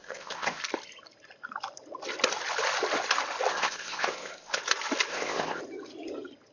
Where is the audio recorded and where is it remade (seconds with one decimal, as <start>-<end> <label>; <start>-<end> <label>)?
0.0-0.6 remade; 0.6-3.5 recorded; 3.5-4.6 remade; 4.6-5.1 recorded; 5.1-5.6 remade; 5.6-6.5 recorded